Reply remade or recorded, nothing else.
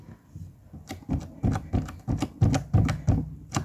recorded